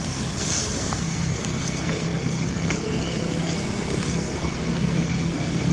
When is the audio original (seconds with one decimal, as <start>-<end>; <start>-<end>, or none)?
none